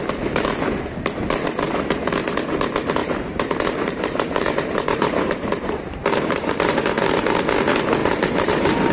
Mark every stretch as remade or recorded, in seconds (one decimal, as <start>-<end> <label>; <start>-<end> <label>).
0.0-3.0 recorded; 3.0-7.2 remade; 7.2-8.0 recorded; 8.0-8.9 remade